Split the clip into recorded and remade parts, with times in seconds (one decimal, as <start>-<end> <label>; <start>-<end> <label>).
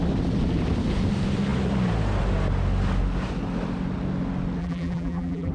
0.0-4.6 recorded; 4.6-5.5 remade